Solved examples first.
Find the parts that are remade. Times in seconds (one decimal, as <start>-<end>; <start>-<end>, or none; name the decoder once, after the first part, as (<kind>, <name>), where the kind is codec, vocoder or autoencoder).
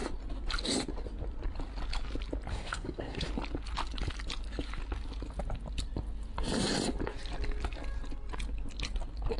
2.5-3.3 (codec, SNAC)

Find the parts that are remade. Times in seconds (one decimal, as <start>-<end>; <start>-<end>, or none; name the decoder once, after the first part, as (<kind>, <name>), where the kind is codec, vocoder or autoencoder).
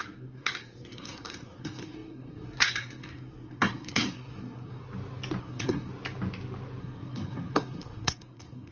0.0-4.8 (codec, SNAC); 5.4-5.9; 6.8-8.7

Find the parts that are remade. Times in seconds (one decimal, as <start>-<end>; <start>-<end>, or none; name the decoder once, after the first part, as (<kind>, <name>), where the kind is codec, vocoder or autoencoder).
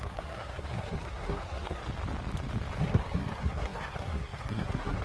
0.0-1.8 (codec, SNAC); 2.8-5.0